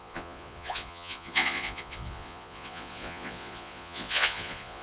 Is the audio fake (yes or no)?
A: yes